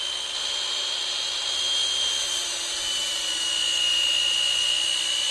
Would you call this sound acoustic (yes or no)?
no